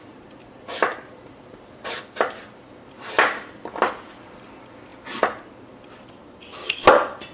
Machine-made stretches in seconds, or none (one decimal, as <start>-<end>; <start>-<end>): 0.0-4.4